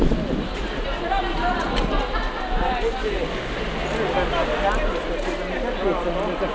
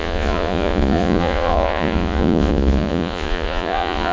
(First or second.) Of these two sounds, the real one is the first